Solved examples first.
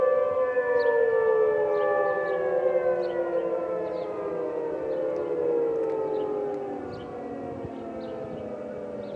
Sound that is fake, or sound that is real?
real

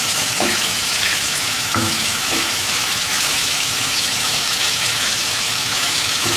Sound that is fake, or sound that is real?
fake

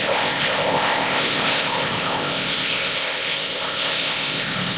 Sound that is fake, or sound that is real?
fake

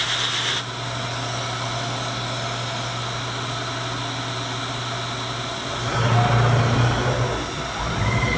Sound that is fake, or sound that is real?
real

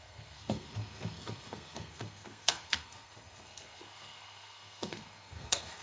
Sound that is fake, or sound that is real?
fake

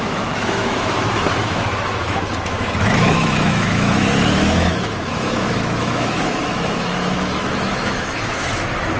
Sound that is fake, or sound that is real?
fake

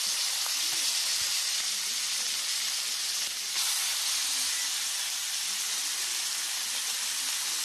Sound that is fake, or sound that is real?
real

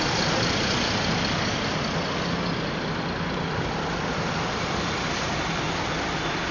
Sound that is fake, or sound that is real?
real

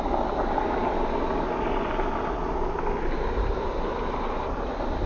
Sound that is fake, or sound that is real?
real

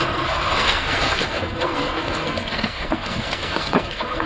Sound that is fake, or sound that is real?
fake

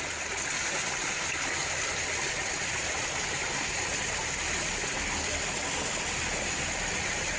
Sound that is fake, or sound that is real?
real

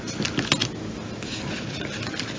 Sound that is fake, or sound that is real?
real